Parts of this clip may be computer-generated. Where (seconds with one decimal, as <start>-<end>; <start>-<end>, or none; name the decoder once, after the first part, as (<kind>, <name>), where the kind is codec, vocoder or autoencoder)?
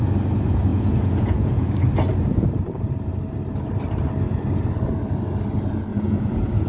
0.7-1.7 (vocoder, Vocos); 5.9-6.7